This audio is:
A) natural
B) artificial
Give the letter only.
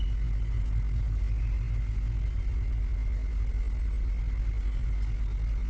A